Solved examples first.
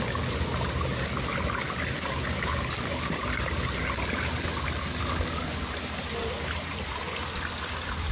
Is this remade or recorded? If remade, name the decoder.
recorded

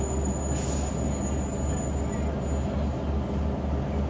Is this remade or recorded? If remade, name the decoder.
recorded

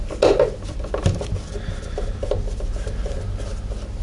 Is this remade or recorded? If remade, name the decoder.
recorded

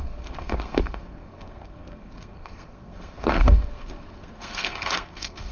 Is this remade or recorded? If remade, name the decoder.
remade, codec, SNAC